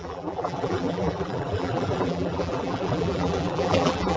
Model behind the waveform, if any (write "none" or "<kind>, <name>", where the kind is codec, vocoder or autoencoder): vocoder, BigVGAN v2